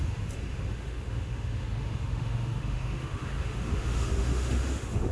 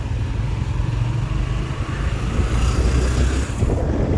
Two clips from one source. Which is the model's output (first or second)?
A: first